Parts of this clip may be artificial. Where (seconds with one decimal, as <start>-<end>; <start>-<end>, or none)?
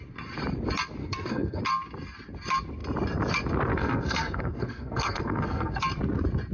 1.0-1.6; 3.7-5.8